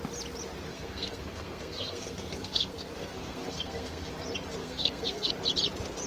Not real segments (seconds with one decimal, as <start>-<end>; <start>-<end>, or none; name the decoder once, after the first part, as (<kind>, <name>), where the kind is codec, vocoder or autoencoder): 0.7-4.1 (codec, SNAC); 4.6-5.3